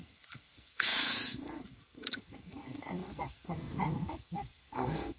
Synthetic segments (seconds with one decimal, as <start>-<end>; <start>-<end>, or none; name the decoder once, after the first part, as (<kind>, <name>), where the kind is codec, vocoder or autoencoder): 0.0-5.2 (codec, SNAC)